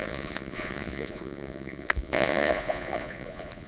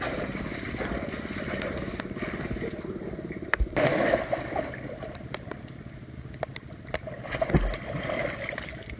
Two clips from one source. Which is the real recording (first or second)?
second